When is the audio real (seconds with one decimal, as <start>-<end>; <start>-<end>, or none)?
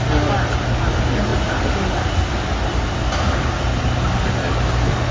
0.0-5.1